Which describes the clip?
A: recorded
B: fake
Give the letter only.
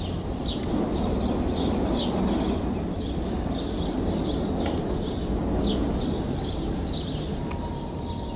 A